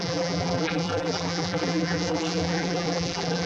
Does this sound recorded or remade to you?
remade